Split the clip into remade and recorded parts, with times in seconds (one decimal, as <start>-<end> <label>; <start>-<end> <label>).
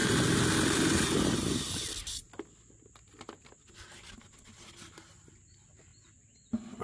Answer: 0.0-6.8 recorded